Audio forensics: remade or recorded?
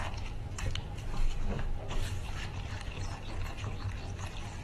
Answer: recorded